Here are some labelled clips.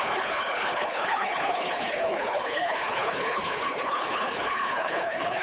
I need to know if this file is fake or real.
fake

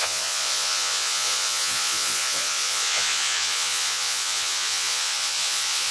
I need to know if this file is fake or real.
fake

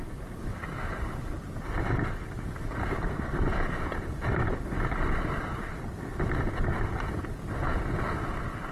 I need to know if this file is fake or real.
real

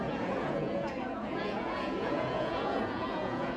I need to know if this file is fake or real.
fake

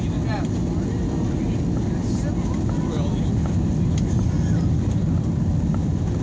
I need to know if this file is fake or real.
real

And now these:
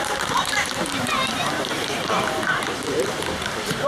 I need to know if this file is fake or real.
fake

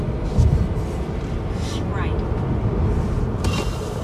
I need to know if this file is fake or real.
real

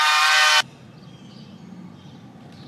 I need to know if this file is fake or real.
real